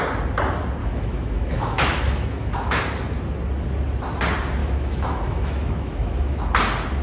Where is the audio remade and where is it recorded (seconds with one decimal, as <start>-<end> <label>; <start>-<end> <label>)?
0.0-0.8 recorded; 0.8-2.8 remade; 2.8-4.6 recorded; 4.6-6.4 remade; 6.4-7.0 recorded